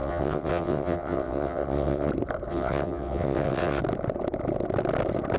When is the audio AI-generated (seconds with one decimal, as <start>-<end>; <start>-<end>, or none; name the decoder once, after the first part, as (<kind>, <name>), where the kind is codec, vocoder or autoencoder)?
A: 0.0-2.1 (vocoder, WaveNeXt); 2.5-3.8